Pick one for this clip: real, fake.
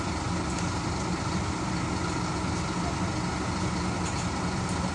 real